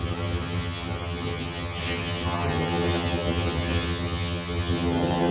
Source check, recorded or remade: remade